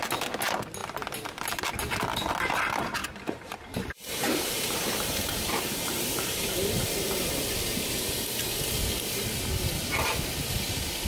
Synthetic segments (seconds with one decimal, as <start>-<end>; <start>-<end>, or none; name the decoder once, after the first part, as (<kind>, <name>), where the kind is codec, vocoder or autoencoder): 3.0-7.3 (vocoder, BigVGAN v2)